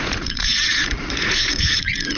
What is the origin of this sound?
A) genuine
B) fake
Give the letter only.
B